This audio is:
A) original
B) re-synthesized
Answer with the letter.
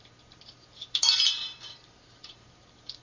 B